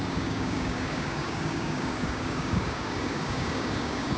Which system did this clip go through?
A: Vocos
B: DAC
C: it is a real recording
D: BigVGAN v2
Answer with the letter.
B